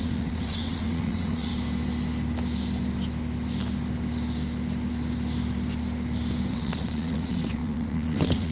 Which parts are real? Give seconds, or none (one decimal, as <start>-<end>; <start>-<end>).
1.5-6.5